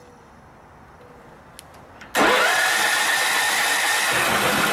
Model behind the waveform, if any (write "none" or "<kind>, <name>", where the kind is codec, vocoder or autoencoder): none